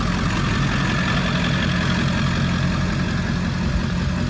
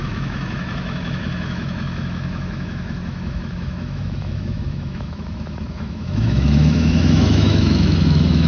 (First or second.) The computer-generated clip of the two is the second